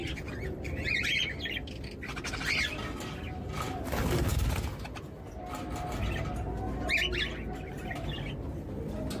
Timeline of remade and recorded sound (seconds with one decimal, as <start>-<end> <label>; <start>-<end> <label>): 0.0-9.2 recorded